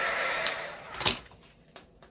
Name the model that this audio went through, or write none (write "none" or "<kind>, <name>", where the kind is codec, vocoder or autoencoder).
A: vocoder, BigVGAN v2